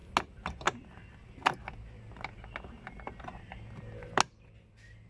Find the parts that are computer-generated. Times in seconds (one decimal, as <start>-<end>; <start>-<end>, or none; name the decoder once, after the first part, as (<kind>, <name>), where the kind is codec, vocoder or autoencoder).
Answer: none